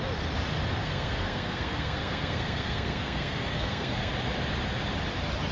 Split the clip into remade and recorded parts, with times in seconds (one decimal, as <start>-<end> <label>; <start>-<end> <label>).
0.0-0.8 recorded; 0.8-4.1 remade; 4.1-5.5 recorded